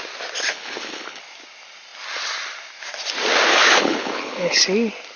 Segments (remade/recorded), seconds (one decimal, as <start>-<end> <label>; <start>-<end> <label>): 0.0-0.5 recorded; 0.5-1.2 remade; 1.2-3.5 recorded; 3.5-4.6 remade; 4.6-5.2 recorded